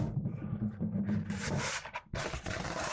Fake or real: fake